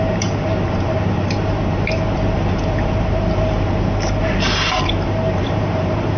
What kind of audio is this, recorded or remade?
remade